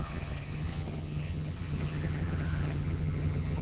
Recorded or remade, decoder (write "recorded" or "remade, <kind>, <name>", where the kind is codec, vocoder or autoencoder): remade, vocoder, HiFi-GAN